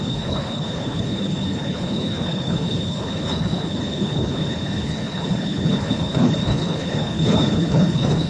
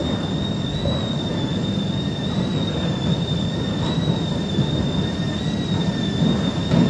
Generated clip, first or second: first